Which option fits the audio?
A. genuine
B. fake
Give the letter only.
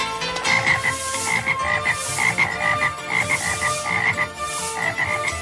A